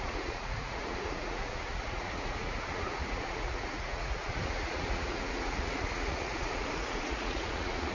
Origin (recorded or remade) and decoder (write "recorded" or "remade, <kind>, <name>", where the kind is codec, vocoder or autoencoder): remade, vocoder, Vocos